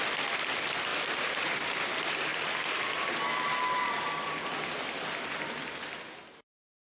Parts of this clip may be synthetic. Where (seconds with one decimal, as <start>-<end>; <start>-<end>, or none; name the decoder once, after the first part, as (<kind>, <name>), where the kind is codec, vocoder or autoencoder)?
none

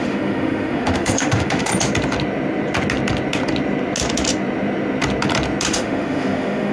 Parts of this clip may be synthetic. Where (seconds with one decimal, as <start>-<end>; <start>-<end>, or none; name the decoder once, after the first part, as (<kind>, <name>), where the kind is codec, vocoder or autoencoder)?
0.0-1.7 (autoencoder, DAC-VAE); 5.7-6.7

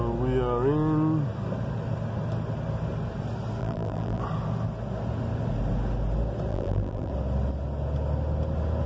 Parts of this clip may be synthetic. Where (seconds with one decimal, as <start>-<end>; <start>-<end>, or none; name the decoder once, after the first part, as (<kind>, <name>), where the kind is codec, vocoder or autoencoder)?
3.6-4.2 (vocoder, BigVGAN v2); 6.5-7.1

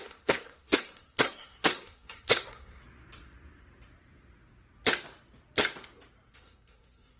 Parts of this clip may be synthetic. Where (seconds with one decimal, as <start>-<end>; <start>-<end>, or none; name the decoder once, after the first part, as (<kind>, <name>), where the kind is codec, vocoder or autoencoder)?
0.0-2.8 (codec, SNAC); 6.3-7.2

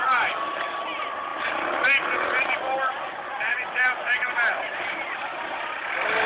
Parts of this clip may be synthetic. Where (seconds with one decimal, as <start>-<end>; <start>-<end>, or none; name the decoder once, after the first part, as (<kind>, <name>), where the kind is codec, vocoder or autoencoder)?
none

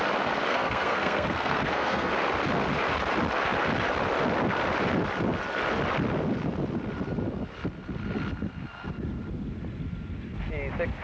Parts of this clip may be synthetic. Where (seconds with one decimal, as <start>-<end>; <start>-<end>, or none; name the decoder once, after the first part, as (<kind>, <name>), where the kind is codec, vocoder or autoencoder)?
0.5-2.1 (codec, SNAC)

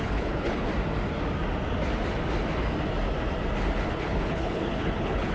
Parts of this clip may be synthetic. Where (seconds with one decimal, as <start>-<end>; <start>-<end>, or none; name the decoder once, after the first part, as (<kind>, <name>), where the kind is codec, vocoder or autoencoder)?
0.0-0.7 (codec, HILCodec); 3.9-5.3

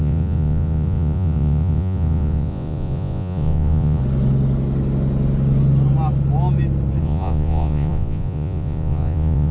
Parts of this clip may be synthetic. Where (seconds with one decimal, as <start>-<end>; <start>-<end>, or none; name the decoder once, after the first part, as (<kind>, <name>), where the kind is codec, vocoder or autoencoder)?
0.0-4.0 (vocoder, Vocos); 7.0-9.5